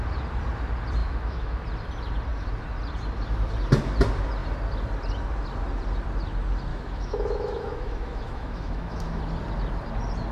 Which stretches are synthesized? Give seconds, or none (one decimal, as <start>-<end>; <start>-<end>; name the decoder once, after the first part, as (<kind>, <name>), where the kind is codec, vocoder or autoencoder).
1.0-1.6 (autoencoder, DAC-VAE); 6.7-9.2